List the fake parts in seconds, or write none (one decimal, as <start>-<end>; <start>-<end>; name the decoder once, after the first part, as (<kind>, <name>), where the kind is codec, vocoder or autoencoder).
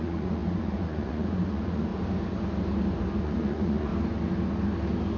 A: 0.0-1.9 (vocoder, Vocos); 3.2-3.9